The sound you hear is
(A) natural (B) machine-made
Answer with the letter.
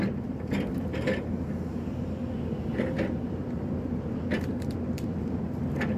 B